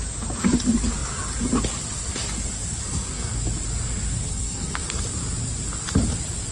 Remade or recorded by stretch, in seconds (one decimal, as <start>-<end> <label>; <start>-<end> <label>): 0.0-2.8 recorded; 2.8-3.3 remade; 3.3-4.3 recorded; 4.3-5.0 remade; 5.0-6.5 recorded